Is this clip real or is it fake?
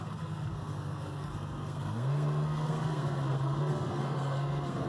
fake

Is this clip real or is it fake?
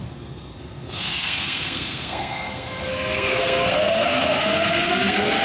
fake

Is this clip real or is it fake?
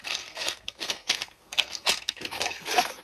fake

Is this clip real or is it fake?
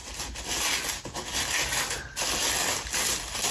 real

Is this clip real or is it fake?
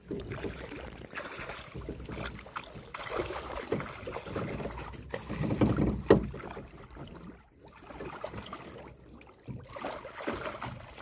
real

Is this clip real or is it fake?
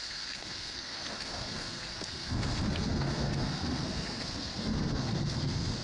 fake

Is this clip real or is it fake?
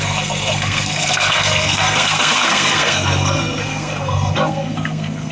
fake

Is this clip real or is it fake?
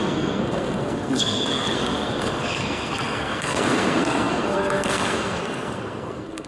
fake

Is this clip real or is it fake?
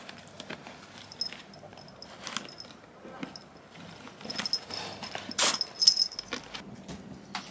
real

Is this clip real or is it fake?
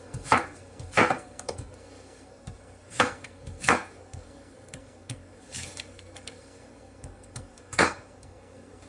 fake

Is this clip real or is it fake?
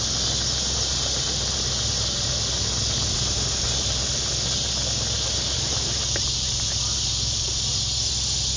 real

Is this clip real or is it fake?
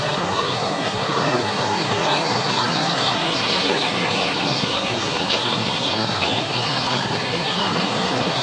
fake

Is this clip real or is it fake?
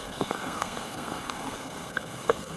fake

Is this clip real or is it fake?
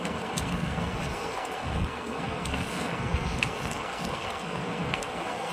fake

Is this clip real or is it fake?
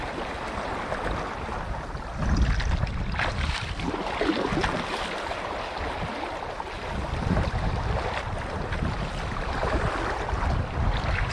real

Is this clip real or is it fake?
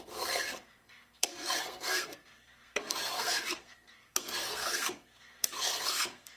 fake